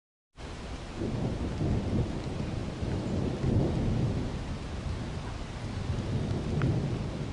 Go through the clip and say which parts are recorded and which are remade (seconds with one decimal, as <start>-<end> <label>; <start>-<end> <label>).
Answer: 0.0-1.0 remade; 1.0-7.3 recorded